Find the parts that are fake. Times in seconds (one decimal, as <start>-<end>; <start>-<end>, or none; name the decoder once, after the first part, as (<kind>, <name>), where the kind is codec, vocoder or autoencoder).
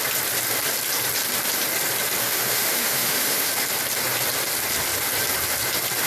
2.2-3.5 (autoencoder, DAC-VAE)